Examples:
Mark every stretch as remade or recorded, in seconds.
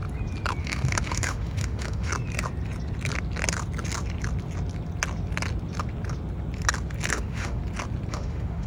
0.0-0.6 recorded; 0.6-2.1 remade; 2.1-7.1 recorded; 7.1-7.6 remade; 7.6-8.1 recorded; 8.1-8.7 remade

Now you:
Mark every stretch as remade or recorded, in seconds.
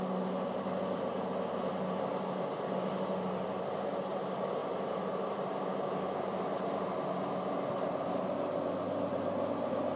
0.0-10.0 recorded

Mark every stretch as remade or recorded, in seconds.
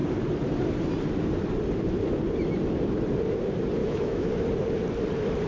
0.0-3.8 recorded; 3.8-4.3 remade; 4.3-5.5 recorded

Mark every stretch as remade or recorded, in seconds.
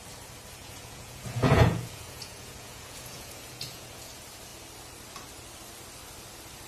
0.0-0.6 recorded; 0.6-4.1 remade; 4.1-6.7 recorded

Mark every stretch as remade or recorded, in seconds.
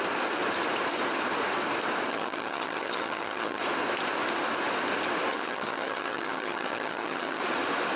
0.0-2.1 recorded; 2.1-3.6 remade; 3.6-5.3 recorded; 5.3-7.4 remade; 7.4-8.0 recorded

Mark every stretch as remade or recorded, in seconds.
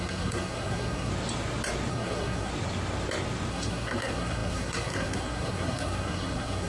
0.0-1.1 remade; 1.1-1.9 recorded; 1.9-2.5 remade; 2.5-3.5 recorded; 3.5-6.7 remade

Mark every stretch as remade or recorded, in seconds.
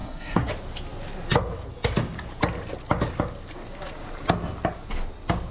0.0-0.5 remade; 0.5-5.5 recorded